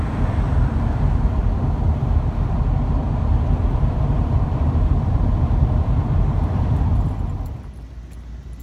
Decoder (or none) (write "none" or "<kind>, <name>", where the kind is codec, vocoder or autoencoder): vocoder, BigVGAN v2